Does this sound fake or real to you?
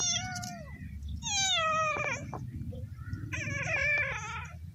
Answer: real